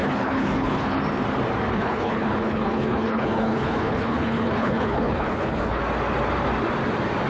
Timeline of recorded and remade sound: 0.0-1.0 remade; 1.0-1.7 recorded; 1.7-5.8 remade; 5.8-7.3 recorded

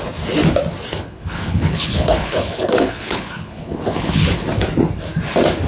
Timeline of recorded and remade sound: 0.0-0.9 recorded; 0.9-4.3 remade; 4.3-5.7 recorded

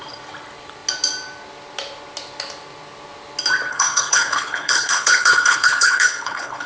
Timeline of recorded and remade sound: 0.0-3.7 recorded; 3.7-6.7 remade

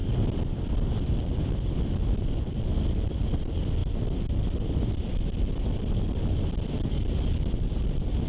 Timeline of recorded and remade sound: 0.0-8.3 recorded

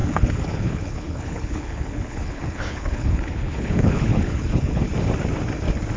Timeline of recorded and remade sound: 0.0-4.9 remade; 4.9-6.0 recorded

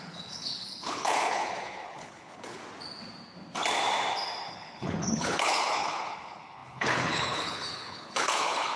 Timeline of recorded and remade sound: 0.0-2.6 remade; 2.6-4.5 recorded; 4.5-8.8 remade

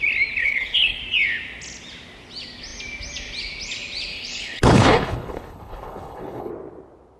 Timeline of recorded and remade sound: 0.0-0.4 recorded; 0.4-1.0 remade; 1.0-4.1 recorded; 4.1-6.5 remade; 6.5-7.2 recorded

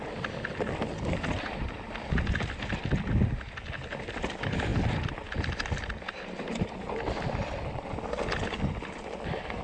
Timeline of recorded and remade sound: 0.0-9.6 recorded